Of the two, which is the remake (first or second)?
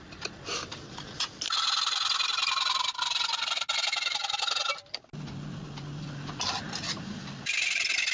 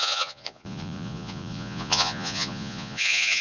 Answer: second